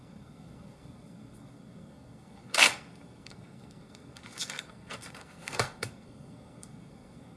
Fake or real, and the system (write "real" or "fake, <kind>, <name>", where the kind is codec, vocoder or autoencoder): fake, codec, SNAC